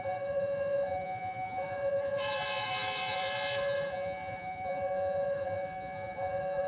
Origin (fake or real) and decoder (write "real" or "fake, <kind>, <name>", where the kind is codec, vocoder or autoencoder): fake, vocoder, Vocos